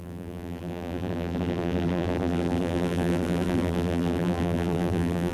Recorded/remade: remade